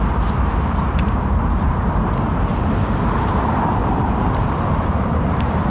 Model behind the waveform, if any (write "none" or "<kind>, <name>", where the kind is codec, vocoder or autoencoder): vocoder, BigVGAN v2